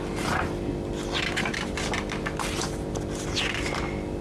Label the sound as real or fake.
real